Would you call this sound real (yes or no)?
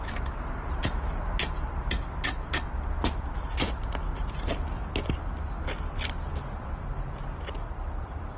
yes